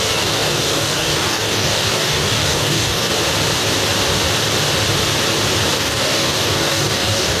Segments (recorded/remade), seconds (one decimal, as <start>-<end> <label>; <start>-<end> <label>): 0.0-3.1 remade; 3.1-5.7 recorded; 5.7-7.4 remade